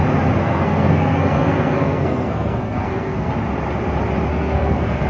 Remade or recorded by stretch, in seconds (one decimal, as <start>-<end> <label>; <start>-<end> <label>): 0.0-0.4 recorded; 0.4-3.3 remade; 3.3-4.3 recorded; 4.3-5.1 remade